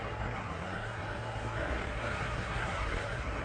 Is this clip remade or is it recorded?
remade